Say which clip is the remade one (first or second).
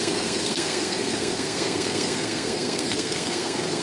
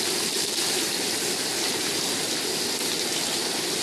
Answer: first